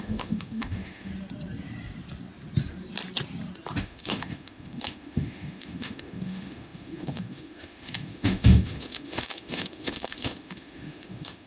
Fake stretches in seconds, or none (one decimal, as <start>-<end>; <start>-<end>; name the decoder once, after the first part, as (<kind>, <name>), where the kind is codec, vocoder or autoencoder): 0.0-1.1 (autoencoder, DAC-VAE); 3.8-11.5